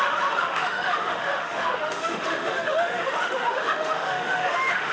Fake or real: fake